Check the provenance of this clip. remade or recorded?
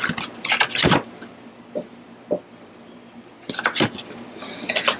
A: recorded